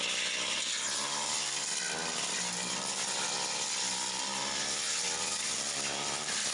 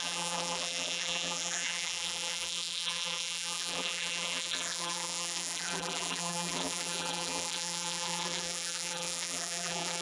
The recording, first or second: first